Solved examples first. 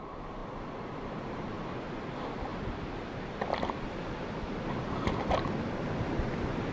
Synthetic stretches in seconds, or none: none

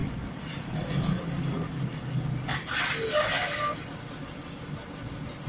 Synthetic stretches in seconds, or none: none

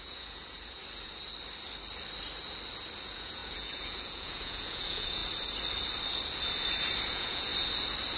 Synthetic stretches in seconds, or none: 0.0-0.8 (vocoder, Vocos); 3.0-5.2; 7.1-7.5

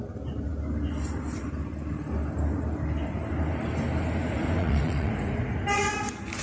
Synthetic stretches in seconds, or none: 4.6-5.1 (vocoder, Vocos)

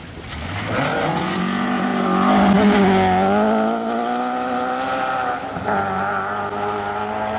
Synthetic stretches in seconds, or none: 0.9-1.4 (vocoder, Vocos)

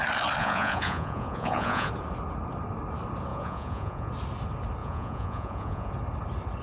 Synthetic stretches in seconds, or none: 0.4-1.9 (vocoder, Vocos); 3.3-4.1; 4.8-5.9